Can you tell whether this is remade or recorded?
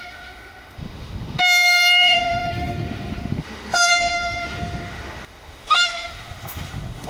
remade